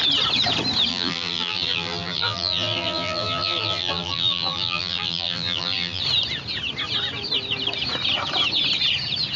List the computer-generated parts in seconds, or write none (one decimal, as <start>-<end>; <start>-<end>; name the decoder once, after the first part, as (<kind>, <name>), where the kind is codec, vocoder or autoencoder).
0.9-6.0 (vocoder, BigVGAN v2)